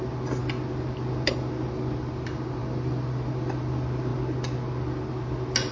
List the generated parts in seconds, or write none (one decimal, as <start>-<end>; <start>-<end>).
none